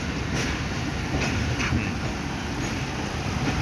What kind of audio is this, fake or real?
real